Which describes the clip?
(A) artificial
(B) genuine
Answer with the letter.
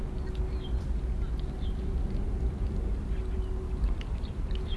B